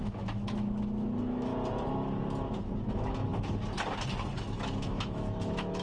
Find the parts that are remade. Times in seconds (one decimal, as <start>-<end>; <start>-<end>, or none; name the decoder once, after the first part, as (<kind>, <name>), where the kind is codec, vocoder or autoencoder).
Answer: 0.0-1.5 (autoencoder, DAC-VAE); 2.8-3.3; 4.4-5.8